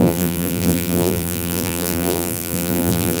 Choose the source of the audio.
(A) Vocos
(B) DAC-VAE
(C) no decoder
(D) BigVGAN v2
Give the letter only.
D